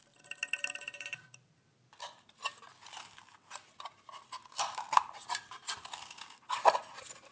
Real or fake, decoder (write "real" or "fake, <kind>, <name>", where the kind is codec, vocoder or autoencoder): real